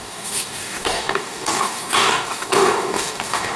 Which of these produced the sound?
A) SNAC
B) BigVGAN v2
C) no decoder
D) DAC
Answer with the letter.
D